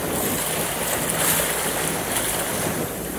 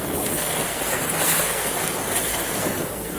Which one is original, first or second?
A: first